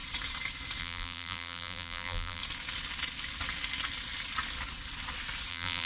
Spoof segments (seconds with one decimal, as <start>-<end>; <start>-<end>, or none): 0.8-2.4; 5.5-5.9